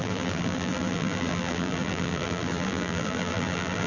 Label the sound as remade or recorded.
remade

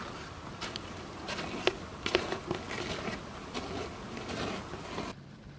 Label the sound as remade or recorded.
recorded